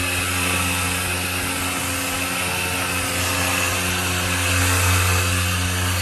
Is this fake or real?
real